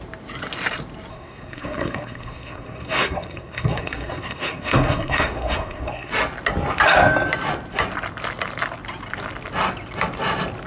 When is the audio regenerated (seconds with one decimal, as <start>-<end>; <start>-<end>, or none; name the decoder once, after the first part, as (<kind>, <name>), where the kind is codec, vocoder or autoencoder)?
1.1-6.1 (codec, SNAC)